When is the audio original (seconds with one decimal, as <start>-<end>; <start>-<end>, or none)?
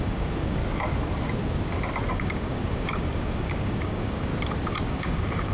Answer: 0.6-2.1; 4.3-4.9